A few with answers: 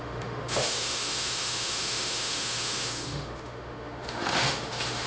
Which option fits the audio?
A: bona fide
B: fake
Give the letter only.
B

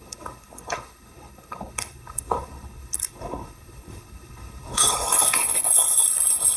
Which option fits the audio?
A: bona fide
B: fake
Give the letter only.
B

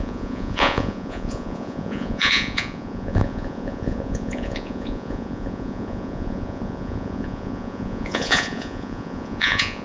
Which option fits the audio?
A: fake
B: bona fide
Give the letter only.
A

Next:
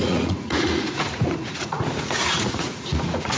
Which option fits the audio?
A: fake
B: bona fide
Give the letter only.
A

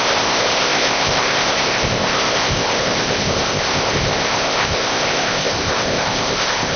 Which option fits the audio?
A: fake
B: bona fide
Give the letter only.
A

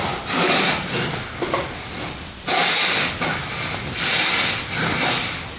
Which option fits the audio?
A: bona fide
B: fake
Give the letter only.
A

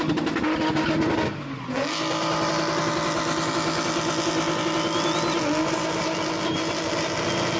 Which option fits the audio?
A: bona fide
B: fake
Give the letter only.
A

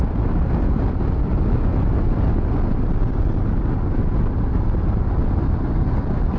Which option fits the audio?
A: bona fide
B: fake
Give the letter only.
A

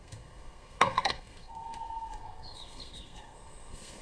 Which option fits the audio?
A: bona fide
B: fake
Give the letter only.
B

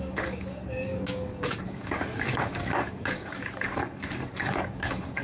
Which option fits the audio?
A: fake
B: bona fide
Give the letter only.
A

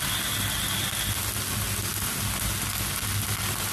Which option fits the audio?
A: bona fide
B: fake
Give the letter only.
A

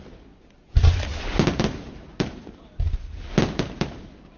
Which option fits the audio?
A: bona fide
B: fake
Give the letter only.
A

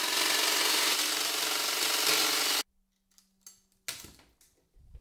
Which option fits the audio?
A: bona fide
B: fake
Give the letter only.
A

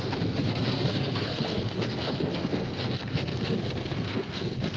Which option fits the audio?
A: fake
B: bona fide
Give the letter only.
A